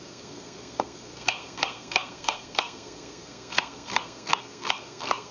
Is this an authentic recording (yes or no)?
no